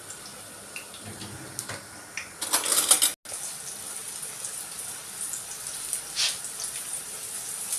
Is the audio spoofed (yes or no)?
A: no